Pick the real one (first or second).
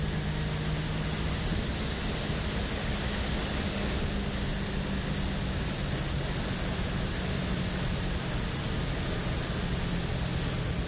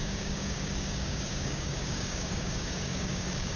first